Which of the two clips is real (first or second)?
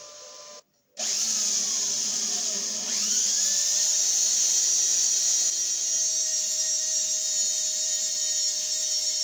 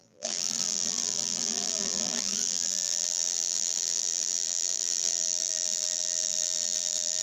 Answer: first